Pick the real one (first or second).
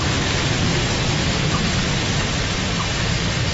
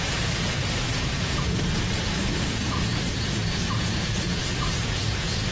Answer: first